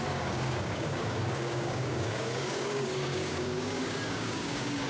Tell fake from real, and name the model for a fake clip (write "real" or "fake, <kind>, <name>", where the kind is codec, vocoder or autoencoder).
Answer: fake, codec, DAC